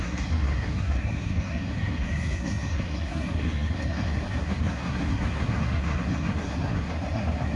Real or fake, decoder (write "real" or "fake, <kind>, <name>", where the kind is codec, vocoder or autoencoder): fake, codec, SNAC